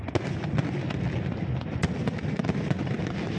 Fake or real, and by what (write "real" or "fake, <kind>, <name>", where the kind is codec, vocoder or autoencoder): real